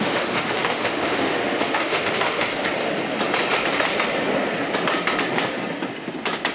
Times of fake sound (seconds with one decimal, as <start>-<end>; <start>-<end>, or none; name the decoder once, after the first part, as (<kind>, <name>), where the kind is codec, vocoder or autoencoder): 0.0-2.5 (autoencoder, DAC-VAE)